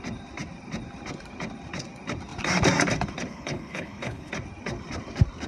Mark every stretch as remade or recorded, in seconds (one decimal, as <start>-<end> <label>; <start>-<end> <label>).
0.0-3.3 recorded; 3.3-4.3 remade; 4.3-5.5 recorded